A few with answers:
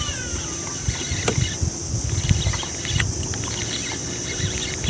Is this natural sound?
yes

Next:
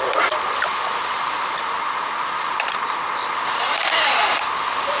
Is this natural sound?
yes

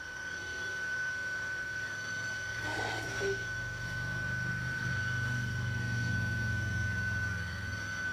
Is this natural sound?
no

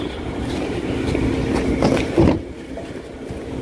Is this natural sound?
yes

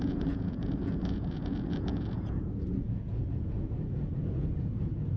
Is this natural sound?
no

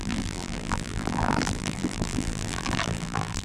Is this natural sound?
no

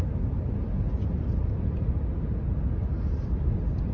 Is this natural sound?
yes